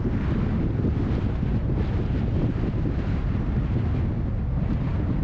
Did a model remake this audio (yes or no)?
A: no